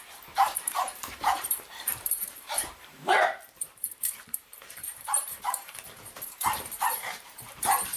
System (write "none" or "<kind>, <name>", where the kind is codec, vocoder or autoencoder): vocoder, BigVGAN v2